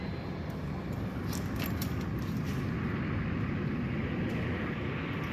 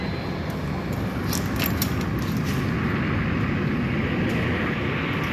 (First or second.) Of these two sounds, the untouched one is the second